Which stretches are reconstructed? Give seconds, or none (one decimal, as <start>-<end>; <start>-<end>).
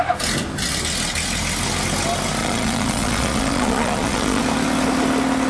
2.4-4.4